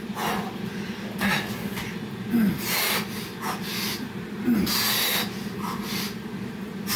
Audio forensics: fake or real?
real